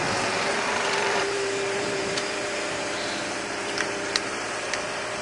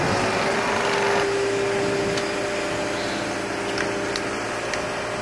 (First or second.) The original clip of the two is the second